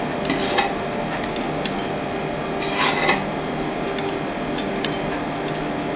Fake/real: real